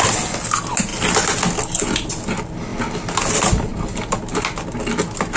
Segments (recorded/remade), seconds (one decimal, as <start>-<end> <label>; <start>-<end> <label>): 0.0-5.4 recorded

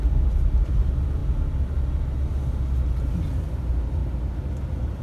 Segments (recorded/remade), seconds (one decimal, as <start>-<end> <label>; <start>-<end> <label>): 0.0-5.0 recorded

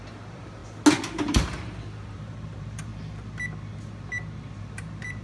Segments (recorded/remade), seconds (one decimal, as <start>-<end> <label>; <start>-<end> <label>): 0.0-0.6 remade; 0.6-1.2 recorded; 1.2-2.9 remade; 2.9-4.6 recorded; 4.6-5.2 remade

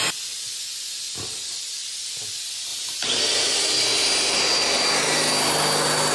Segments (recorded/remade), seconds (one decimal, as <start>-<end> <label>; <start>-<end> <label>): 0.0-2.7 recorded; 2.7-3.2 remade; 3.2-6.1 recorded

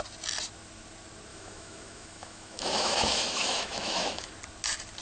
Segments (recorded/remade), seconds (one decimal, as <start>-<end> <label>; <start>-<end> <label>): 0.0-1.3 recorded; 1.3-4.3 remade; 4.3-5.0 recorded

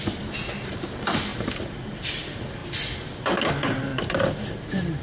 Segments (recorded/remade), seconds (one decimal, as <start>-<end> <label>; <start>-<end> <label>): 0.0-0.7 recorded; 0.7-2.6 remade; 2.6-3.5 recorded; 3.5-3.9 remade; 3.9-4.5 recorded; 4.5-5.0 remade

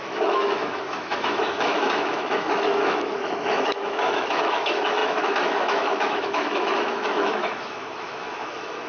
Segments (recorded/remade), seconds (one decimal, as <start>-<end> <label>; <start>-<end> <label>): 0.0-8.9 remade

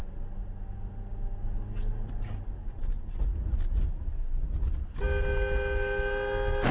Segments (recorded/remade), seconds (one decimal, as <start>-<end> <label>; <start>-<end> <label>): 0.0-6.7 recorded